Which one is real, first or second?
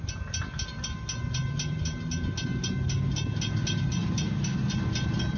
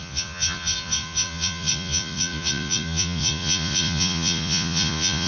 first